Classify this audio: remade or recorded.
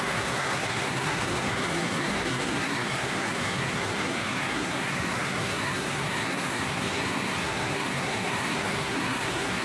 remade